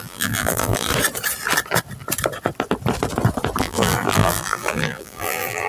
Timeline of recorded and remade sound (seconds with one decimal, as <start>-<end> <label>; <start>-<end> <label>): 0.0-0.9 remade; 0.9-3.6 recorded; 3.6-5.7 remade